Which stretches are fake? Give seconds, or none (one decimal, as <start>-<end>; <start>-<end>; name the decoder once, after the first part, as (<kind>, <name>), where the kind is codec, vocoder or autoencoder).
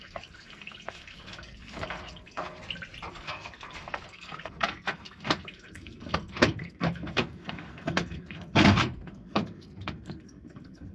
0.0-2.6 (codec, SNAC); 3.1-10.9